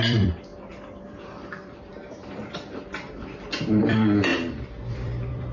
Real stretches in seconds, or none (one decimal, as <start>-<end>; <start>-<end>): 4.3-4.9